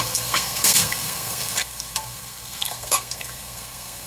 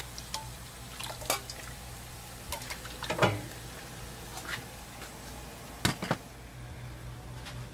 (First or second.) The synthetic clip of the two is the first